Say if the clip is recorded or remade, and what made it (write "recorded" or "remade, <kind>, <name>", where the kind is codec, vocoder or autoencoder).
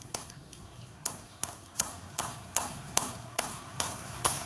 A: remade, codec, SNAC